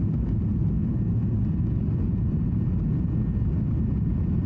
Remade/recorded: recorded